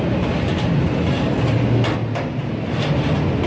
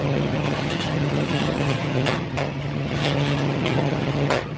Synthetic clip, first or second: second